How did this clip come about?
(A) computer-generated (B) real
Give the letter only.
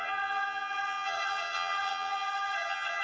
A